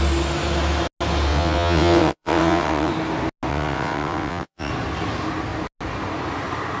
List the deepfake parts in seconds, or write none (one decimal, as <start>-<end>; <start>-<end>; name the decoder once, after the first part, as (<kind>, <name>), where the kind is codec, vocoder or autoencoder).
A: 1.3-2.9 (vocoder, WaveNeXt); 3.5-4.7